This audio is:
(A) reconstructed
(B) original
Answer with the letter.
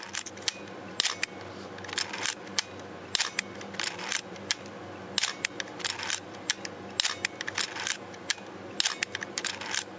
B